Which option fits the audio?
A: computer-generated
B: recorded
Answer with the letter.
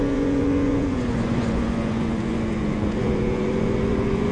A